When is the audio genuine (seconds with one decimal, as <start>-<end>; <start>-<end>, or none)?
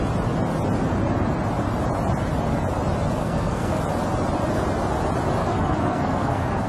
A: 0.0-3.2; 3.8-5.4